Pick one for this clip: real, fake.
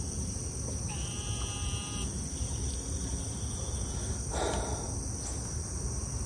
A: real